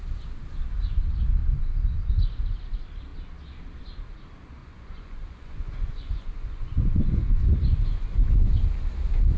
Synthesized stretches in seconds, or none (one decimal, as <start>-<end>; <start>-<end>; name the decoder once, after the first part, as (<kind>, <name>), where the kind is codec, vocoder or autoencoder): 4.6-8.3 (vocoder, Vocos)